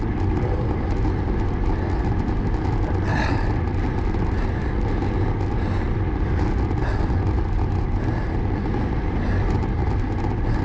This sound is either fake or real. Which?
real